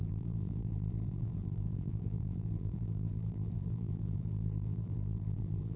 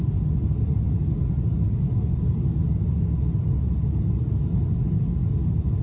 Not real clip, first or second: first